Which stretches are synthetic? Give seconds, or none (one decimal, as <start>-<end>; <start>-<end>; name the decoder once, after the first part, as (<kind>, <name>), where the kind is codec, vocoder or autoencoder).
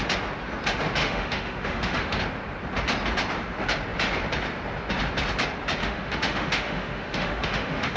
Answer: 1.0-2.2 (autoencoder, DAC-VAE); 5.8-8.0